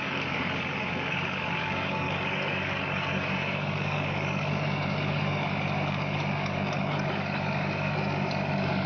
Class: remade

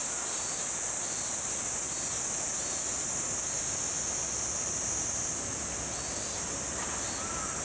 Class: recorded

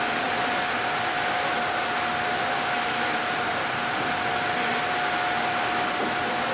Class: recorded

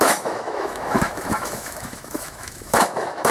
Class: remade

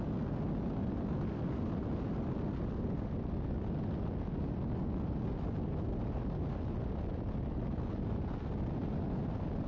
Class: recorded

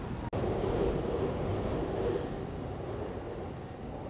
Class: recorded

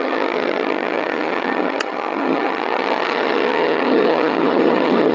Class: remade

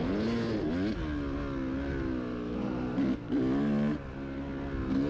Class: recorded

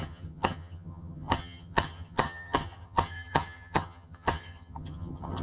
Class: remade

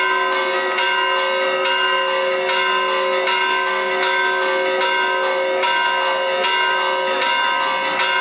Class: recorded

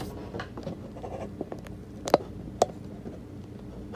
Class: recorded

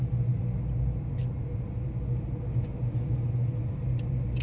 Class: recorded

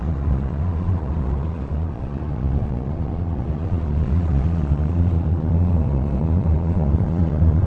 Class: remade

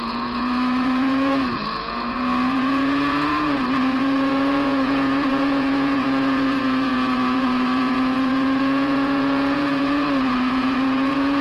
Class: remade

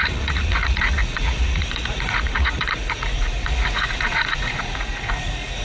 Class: remade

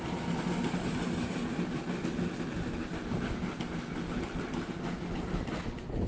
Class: recorded